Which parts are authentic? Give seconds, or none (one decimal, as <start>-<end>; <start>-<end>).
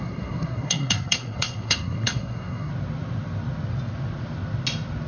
2.7-5.1